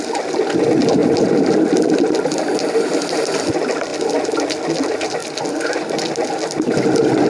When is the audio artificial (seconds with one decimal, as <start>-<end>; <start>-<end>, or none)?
none